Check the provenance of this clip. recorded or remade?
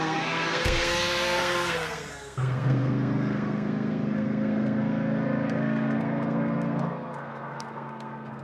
remade